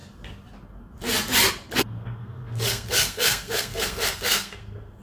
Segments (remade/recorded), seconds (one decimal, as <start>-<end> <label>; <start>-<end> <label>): 0.0-2.0 recorded; 2.0-5.0 remade